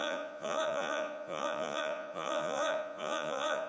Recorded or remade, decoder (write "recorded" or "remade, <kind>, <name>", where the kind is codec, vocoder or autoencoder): remade, vocoder, Vocos